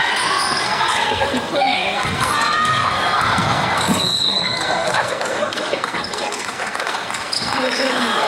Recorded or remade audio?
remade